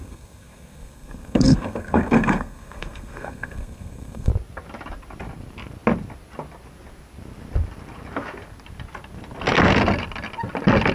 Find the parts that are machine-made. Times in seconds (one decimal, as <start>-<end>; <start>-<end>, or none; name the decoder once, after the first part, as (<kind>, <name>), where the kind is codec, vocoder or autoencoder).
0.0-4.3 (codec, SNAC)